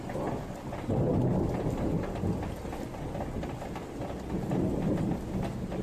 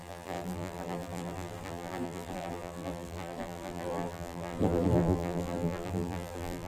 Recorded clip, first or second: first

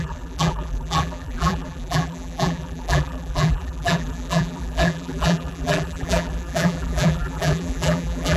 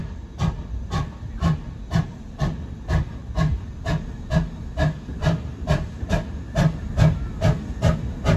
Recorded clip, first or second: second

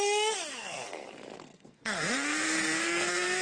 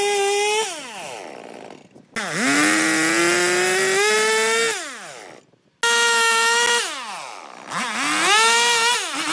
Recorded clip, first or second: second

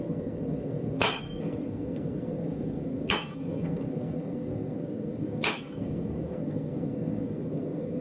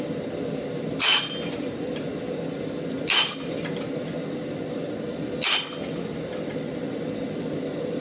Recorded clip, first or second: second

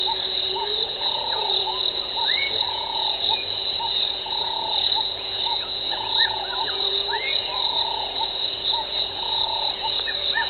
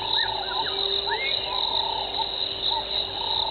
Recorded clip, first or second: second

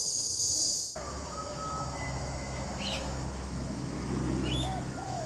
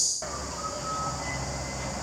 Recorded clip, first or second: second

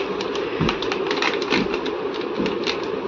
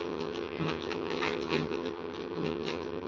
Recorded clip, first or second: first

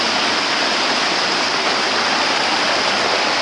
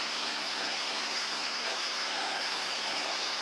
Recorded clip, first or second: first